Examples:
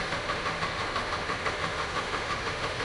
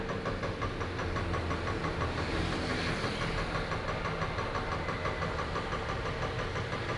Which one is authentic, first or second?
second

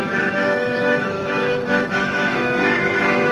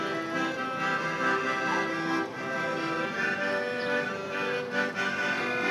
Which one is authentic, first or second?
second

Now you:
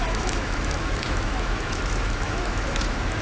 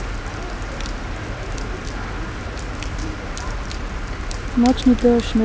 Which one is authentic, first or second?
second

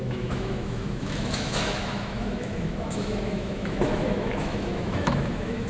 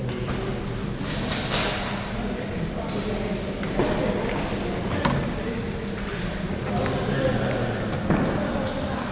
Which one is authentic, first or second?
second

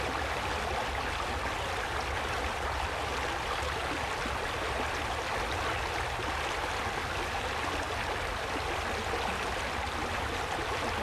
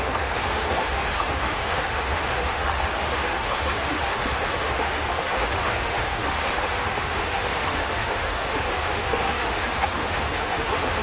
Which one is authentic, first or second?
first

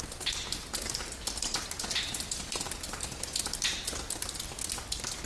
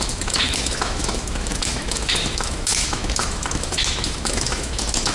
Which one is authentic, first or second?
first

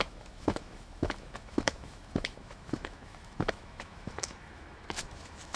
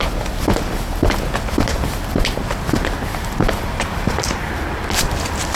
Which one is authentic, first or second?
second